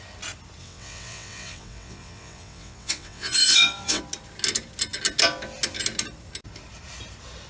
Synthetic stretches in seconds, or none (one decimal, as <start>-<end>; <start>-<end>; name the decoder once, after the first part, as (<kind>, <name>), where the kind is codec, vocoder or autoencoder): 0.6-4.0 (vocoder, WaveNeXt)